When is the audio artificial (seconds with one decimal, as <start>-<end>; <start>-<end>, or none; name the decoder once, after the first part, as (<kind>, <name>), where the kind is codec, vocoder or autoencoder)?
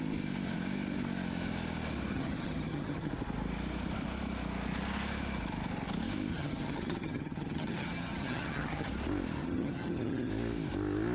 2.1-3.1 (vocoder, HiFi-GAN); 6.3-8.9; 9.4-10.3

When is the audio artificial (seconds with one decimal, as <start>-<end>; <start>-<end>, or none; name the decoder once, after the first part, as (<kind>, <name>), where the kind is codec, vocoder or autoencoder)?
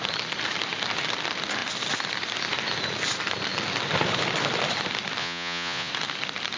5.2-5.9 (vocoder, Vocos)